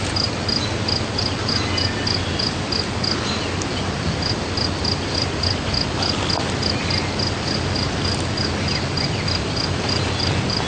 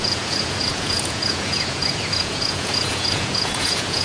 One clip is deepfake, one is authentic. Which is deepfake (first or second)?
second